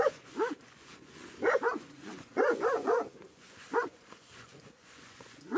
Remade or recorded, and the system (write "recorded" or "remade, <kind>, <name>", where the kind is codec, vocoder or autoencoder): remade, vocoder, Vocos